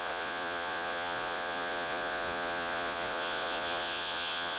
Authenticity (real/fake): fake